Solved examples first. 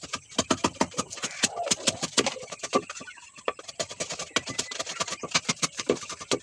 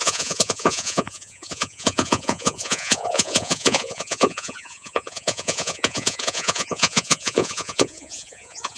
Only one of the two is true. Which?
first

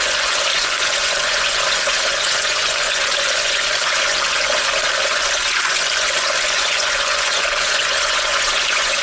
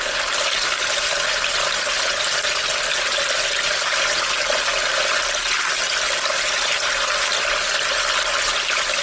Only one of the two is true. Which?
second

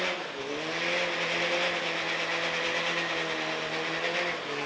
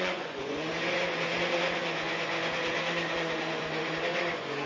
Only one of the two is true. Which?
first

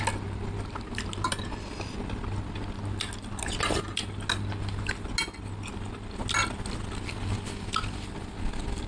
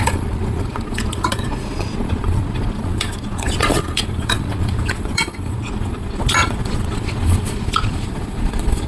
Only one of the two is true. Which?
first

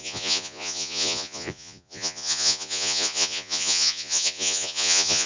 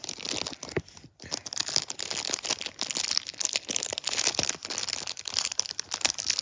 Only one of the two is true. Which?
second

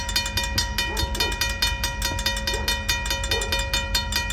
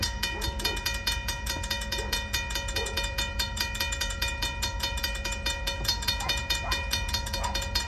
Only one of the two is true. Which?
first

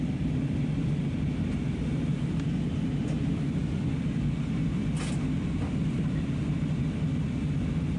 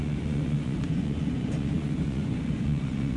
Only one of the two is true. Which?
first